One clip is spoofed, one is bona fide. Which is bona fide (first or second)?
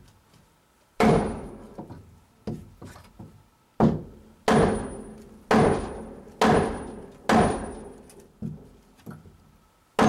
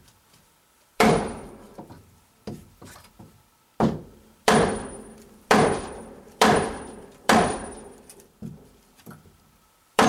first